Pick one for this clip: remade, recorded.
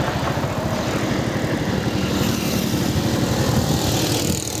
recorded